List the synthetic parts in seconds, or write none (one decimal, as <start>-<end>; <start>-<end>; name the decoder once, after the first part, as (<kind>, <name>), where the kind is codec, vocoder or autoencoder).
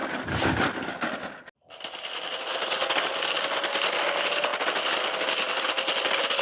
none